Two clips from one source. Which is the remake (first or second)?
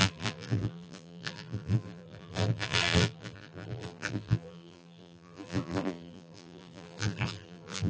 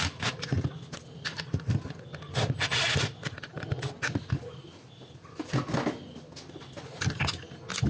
first